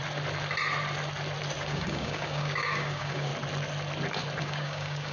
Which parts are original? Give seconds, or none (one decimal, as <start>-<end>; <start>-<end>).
0.0-1.6; 3.3-4.4

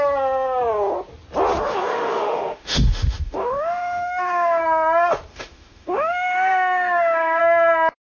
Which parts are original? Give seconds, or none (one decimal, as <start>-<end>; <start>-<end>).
0.0-1.6; 4.6-5.3; 7.4-8.0

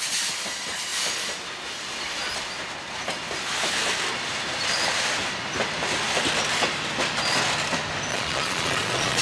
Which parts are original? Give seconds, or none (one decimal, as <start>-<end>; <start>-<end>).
0.0-8.1

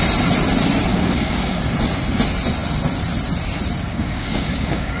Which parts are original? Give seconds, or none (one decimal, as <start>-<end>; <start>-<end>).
0.0-0.9; 1.6-3.9

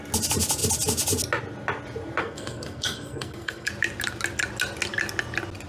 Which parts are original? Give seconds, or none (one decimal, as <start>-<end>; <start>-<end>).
0.0-2.2; 3.7-5.7

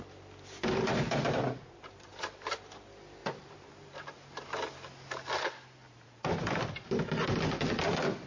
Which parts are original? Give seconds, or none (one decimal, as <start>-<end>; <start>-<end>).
0.0-0.9; 2.1-3.2; 4.5-5.8; 6.6-8.3

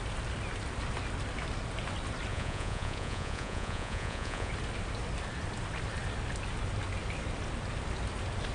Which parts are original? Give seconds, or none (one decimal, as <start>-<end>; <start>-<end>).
0.0-2.3; 4.5-8.5

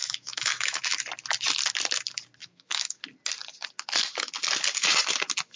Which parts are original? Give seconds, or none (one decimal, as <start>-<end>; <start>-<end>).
1.0-2.4; 3.0-5.6